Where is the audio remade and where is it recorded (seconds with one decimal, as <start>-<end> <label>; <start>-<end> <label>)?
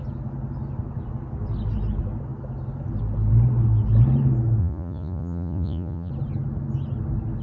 0.0-4.6 recorded; 4.6-6.1 remade; 6.1-7.4 recorded